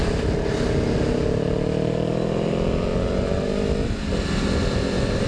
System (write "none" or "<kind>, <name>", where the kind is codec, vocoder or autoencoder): none